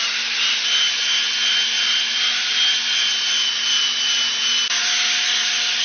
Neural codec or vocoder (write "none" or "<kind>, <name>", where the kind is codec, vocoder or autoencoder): none